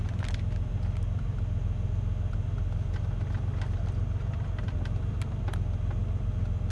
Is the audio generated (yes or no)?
no